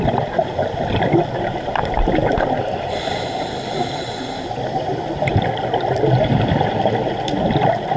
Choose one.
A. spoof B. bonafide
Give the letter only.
B